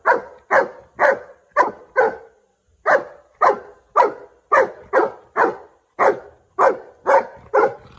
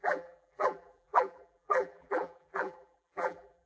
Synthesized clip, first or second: second